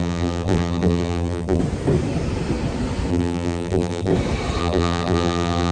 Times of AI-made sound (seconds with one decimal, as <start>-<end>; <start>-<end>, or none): 0.0-1.6; 3.1-4.1; 4.6-5.7